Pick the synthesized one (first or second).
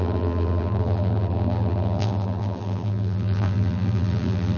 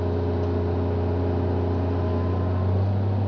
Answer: first